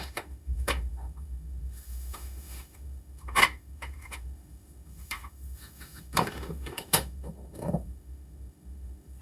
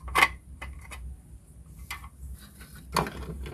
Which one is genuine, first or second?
second